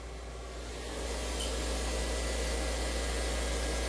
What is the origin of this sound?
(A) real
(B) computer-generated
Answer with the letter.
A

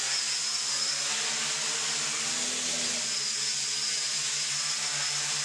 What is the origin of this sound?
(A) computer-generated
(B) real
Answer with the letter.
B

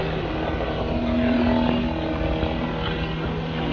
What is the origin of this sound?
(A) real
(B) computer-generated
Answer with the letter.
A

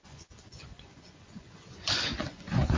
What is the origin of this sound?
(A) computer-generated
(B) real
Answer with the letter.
A